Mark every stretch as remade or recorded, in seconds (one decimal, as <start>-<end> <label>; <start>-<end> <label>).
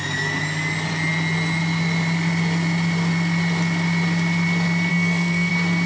0.0-4.9 recorded; 4.9-5.5 remade; 5.5-5.9 recorded